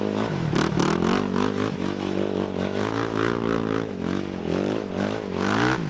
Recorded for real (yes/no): no